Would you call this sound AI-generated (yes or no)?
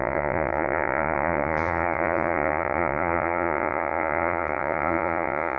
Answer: yes